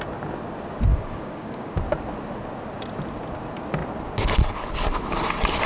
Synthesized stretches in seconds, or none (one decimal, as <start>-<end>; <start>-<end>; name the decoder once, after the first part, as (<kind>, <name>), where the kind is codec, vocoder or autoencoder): 0.9-1.8 (codec, DAC)